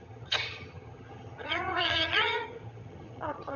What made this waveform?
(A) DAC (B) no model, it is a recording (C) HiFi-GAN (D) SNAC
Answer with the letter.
C